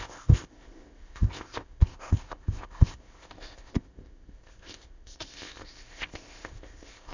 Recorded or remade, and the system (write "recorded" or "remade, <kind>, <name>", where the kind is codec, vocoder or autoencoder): remade, codec, ZipCodec